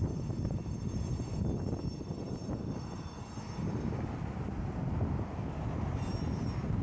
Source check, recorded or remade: recorded